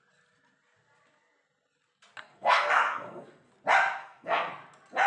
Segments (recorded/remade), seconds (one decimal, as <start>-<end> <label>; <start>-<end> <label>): 0.0-2.2 recorded; 2.2-3.5 remade; 3.5-4.0 recorded; 4.0-4.5 remade; 4.5-5.1 recorded